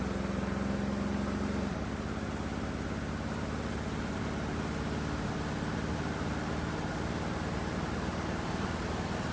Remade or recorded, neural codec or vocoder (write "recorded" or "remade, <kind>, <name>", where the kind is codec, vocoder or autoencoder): recorded